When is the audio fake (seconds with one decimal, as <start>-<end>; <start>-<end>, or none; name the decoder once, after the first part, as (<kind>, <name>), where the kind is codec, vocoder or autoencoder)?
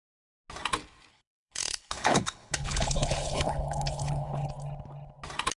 1.1-4.5 (codec, HILCodec)